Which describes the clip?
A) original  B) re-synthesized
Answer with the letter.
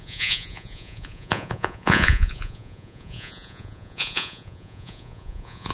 B